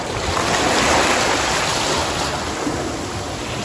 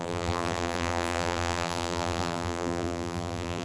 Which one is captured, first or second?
first